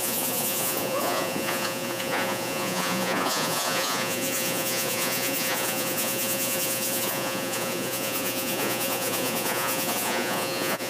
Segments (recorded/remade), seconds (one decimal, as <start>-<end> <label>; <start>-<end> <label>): 0.0-10.9 remade

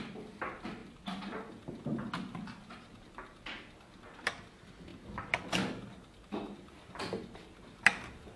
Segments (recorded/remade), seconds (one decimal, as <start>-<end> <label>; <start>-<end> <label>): 0.0-8.4 recorded

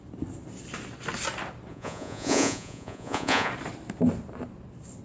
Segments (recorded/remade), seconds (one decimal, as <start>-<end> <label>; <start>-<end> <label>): 0.0-1.7 recorded; 1.7-3.5 remade; 3.5-5.0 recorded

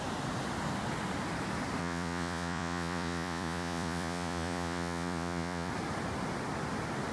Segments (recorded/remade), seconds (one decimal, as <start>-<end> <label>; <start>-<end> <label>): 0.0-1.8 recorded; 1.8-5.7 remade; 5.7-7.1 recorded

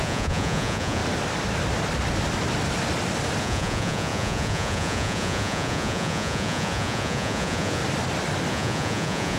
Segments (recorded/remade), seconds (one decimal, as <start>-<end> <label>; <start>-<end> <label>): 0.0-1.0 remade; 1.0-3.4 recorded; 3.4-7.8 remade; 7.8-8.5 recorded; 8.5-9.4 remade

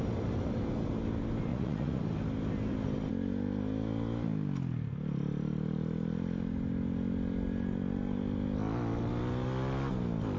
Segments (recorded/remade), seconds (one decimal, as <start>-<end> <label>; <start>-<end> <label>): 0.0-1.5 recorded; 1.5-2.0 remade; 2.0-10.4 recorded

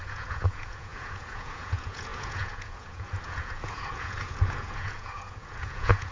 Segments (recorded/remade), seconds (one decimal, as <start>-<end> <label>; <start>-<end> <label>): 0.0-6.1 remade

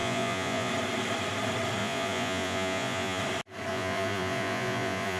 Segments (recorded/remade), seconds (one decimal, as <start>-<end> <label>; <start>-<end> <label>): 0.0-0.7 remade; 0.7-1.8 recorded; 1.8-3.2 remade; 3.2-3.7 recorded; 3.7-5.2 remade